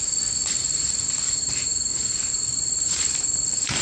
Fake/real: fake